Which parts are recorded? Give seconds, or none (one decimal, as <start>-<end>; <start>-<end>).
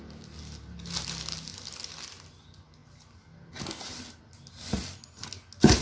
0.0-1.5; 2.1-5.8